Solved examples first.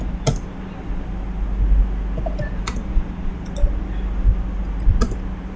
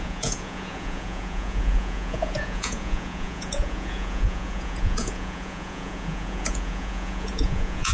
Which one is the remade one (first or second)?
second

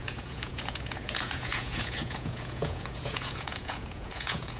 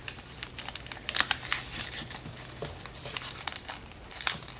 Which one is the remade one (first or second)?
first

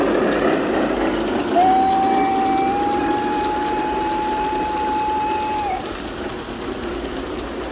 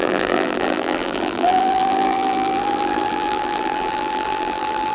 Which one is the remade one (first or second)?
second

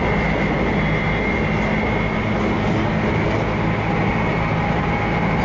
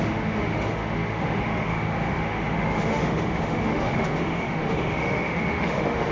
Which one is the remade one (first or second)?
second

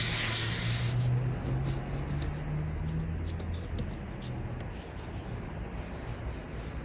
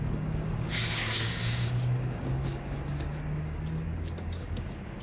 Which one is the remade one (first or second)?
second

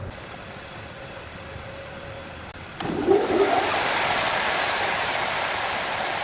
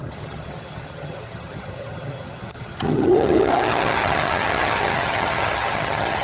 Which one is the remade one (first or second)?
second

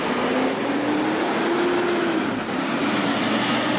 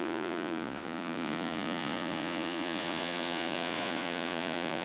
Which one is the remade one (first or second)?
second